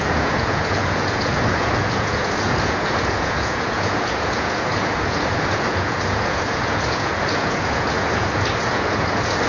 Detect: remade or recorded remade